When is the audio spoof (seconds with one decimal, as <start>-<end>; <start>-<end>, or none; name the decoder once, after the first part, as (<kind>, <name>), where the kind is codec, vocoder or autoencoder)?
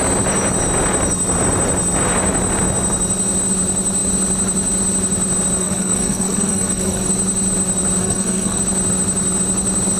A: 5.6-7.1 (codec, SNAC); 8.0-8.6